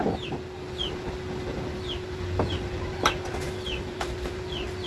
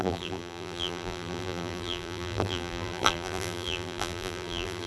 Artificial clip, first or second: second